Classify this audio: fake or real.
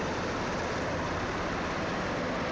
real